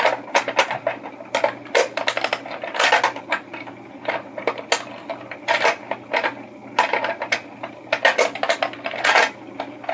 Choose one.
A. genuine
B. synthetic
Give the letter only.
A